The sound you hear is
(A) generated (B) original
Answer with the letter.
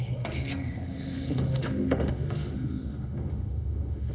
A